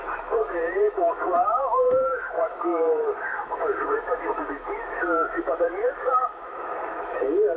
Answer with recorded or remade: remade